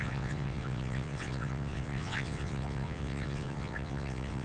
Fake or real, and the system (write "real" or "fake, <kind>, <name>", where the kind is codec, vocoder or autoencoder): fake, vocoder, WaveNeXt